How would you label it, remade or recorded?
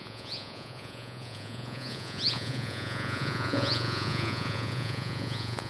remade